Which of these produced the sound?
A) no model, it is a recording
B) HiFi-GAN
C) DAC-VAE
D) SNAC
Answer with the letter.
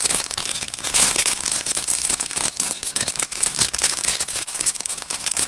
D